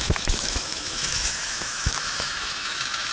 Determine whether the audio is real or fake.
fake